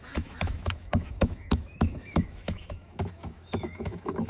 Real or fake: fake